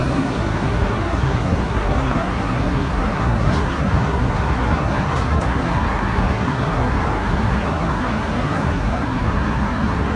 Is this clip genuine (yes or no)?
no